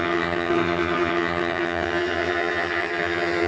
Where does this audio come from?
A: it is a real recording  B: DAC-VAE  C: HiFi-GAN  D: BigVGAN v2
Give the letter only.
C